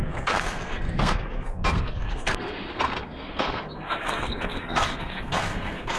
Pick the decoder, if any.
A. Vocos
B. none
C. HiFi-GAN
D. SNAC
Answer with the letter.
D